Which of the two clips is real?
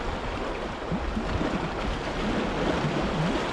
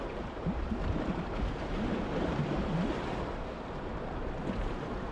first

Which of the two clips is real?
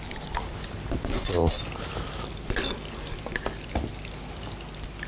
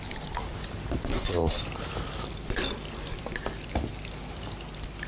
first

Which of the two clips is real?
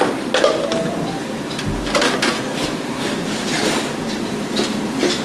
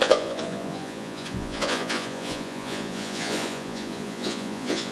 first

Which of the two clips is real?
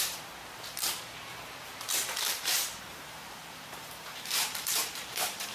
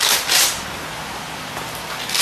second